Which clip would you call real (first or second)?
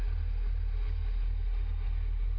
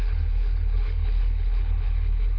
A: first